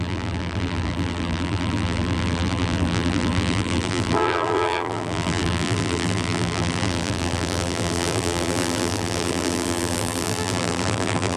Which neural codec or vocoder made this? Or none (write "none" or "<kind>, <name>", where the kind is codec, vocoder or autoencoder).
vocoder, BigVGAN v2